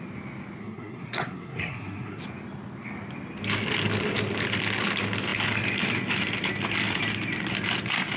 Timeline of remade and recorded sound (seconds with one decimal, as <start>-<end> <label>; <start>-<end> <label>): 0.0-0.6 recorded; 0.6-2.2 remade; 2.2-8.2 recorded